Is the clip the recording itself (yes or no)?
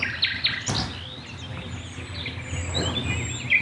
yes